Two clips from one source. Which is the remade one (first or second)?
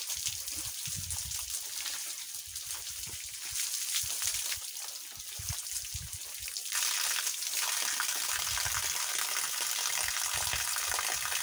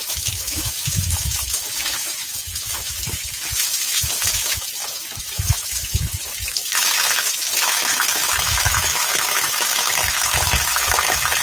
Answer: second